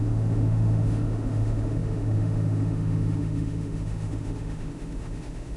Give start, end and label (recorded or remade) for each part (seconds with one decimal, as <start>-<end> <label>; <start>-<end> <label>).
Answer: 0.0-5.6 remade